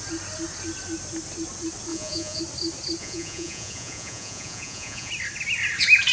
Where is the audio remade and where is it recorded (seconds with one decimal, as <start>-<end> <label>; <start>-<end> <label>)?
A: 0.0-1.9 recorded; 1.9-2.4 remade; 2.4-3.0 recorded; 3.0-5.1 remade; 5.1-6.1 recorded